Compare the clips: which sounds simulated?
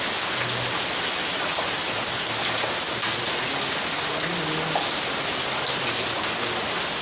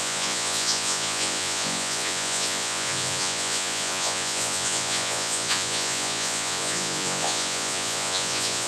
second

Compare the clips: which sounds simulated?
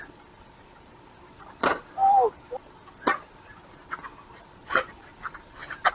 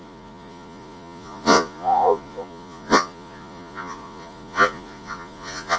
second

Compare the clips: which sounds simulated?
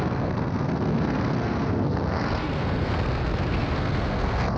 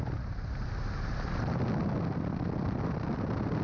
first